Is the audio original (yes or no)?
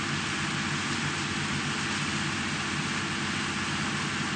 yes